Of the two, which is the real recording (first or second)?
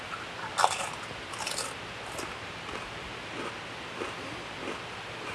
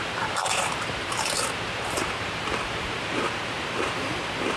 first